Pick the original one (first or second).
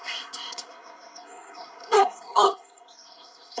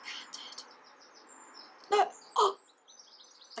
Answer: second